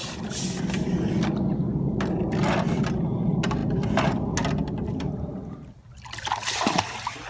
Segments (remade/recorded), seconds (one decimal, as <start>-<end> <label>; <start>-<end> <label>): 0.0-7.3 recorded